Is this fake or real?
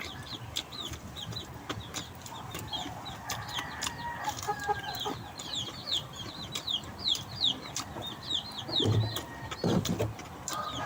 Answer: real